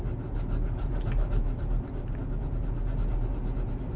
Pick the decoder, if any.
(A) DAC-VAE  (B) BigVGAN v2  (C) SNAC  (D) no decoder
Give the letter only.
D